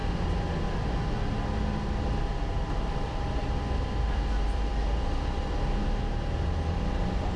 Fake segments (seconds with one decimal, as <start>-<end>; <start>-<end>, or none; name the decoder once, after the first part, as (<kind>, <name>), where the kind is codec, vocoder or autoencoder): none

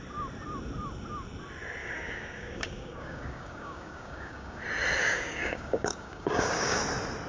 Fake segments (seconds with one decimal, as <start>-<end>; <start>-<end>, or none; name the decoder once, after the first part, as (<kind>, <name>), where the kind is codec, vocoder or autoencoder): 1.8-4.6 (codec, DAC); 5.0-6.8

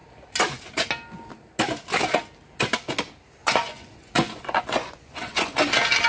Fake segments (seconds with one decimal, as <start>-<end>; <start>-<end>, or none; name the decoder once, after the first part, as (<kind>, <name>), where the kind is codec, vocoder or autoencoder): 3.4-5.6 (vocoder, Vocos)

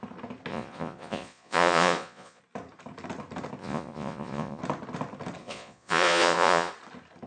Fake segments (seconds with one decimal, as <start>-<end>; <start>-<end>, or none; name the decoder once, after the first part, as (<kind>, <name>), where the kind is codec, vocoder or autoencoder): 0.5-2.4 (vocoder, Vocos); 3.6-4.6; 5.4-6.7

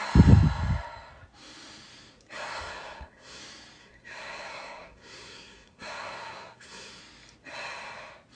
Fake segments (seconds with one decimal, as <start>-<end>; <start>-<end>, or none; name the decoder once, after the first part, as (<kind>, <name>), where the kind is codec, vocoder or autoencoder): 2.5-3.4 (codec, SNAC); 3.8-7.0

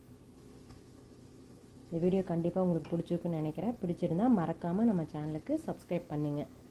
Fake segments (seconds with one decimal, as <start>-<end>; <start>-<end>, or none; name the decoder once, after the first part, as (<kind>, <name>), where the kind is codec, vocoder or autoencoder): 0.0-1.8 (autoencoder, DAC-VAE); 5.8-6.7

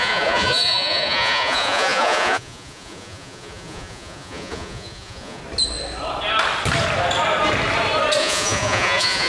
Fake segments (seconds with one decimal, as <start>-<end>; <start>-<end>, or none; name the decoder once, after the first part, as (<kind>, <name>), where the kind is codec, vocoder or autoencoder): 0.0-5.4 (vocoder, Vocos); 8.2-9.3